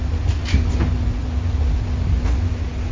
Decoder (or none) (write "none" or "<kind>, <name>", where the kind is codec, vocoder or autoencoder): none